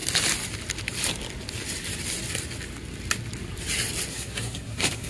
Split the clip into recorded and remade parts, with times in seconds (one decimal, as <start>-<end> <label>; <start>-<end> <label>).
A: 0.0-4.1 recorded; 4.1-5.1 remade